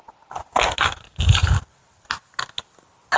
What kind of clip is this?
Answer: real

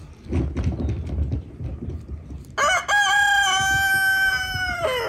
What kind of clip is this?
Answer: real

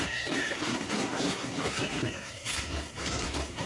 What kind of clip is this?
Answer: fake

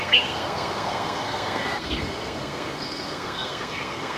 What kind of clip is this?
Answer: fake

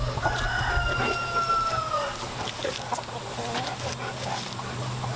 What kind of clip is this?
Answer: real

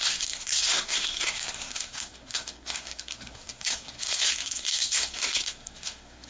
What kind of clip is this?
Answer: fake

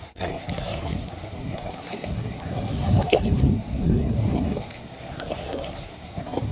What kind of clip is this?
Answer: fake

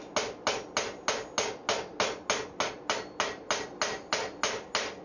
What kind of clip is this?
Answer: real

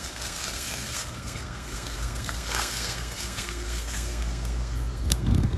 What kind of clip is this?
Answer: fake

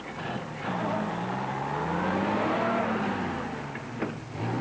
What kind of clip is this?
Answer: real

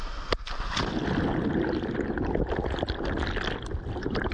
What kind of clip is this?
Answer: real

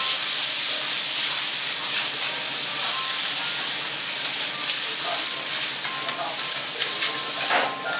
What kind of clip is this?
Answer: real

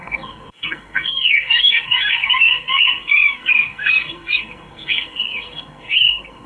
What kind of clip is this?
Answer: fake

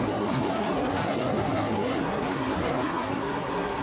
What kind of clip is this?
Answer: fake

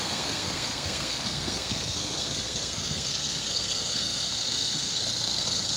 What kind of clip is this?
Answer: fake